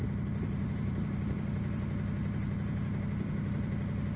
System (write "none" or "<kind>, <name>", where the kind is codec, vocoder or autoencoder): none